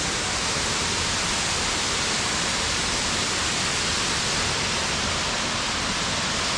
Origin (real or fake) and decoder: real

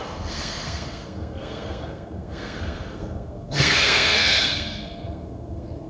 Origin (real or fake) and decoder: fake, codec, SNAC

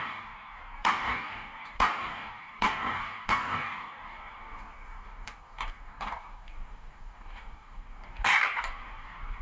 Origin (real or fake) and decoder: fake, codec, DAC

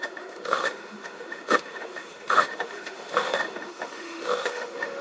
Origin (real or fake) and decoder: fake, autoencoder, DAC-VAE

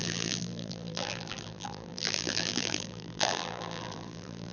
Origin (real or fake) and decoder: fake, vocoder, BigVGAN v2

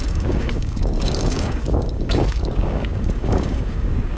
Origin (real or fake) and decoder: fake, codec, DAC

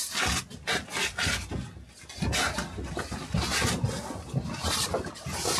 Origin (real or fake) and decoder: real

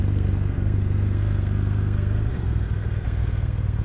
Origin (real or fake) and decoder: fake, codec, SNAC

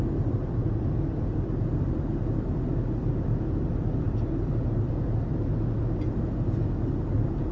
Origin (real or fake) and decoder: fake, vocoder, BigVGAN v2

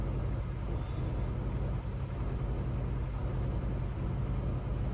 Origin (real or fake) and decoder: real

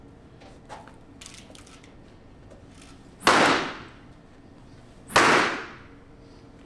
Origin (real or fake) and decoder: real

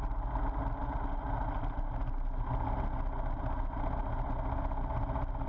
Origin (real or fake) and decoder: real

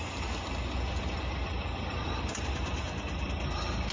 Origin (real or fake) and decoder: real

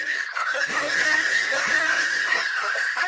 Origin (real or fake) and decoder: fake, codec, SNAC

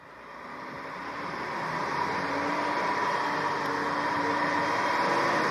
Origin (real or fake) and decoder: real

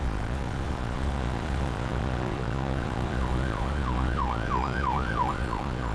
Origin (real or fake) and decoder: fake, vocoder, Vocos